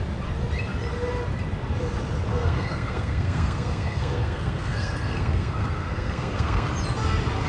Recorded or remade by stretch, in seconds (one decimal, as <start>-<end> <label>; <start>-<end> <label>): 0.0-2.3 recorded; 2.3-6.7 remade; 6.7-7.5 recorded